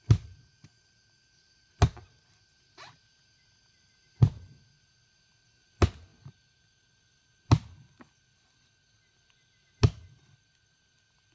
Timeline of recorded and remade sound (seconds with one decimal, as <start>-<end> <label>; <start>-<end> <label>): 0.0-11.3 recorded